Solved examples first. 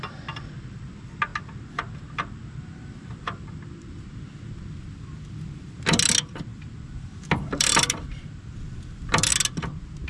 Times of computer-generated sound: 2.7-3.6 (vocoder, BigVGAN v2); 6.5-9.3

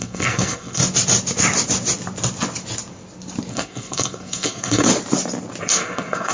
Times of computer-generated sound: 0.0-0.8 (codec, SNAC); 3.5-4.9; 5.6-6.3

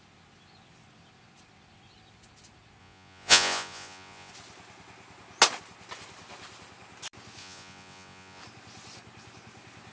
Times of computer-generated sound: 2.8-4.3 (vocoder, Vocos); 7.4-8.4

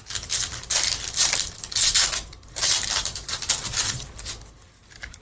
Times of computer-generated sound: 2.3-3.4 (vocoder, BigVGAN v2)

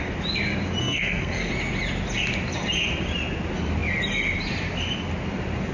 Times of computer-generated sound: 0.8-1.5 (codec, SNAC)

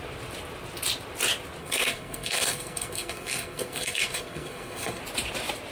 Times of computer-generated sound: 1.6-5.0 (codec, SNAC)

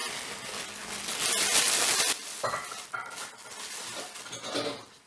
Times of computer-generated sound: none